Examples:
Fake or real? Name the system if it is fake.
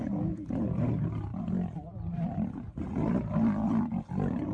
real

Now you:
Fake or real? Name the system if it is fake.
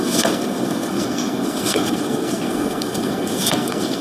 fake, codec, SNAC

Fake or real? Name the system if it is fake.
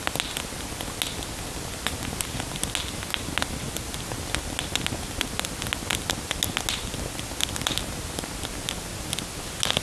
real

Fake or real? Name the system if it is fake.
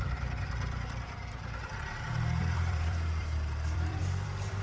fake, vocoder, BigVGAN v2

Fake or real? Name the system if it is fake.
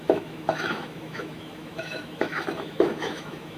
fake, autoencoder, DAC-VAE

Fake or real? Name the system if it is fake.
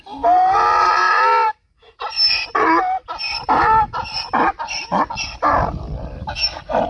real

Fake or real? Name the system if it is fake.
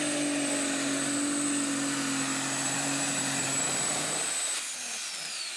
real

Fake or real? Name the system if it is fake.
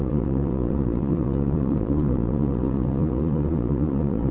fake, vocoder, Vocos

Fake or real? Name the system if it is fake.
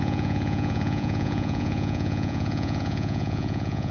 fake, vocoder, Vocos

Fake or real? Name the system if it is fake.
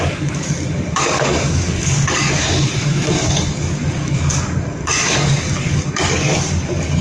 fake, codec, DAC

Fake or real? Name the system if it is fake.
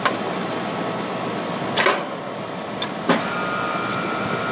real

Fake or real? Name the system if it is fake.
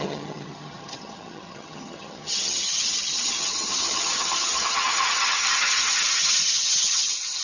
fake, vocoder, HiFi-GAN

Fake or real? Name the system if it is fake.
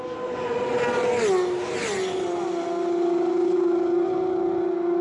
real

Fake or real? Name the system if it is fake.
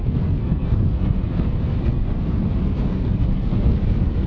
fake, codec, SNAC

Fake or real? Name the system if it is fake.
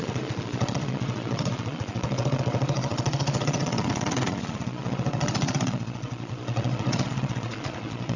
fake, vocoder, Vocos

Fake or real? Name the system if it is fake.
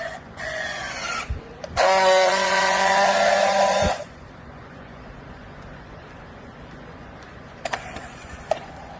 fake, vocoder, Vocos